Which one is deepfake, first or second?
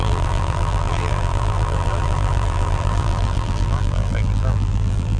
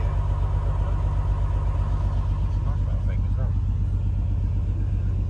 first